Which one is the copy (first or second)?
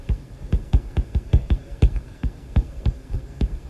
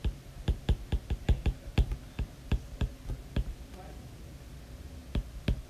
first